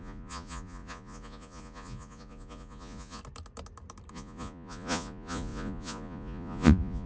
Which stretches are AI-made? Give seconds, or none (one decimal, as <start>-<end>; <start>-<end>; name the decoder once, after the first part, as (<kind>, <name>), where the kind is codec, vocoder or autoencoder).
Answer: 0.0-3.2 (vocoder, Vocos); 4.1-7.1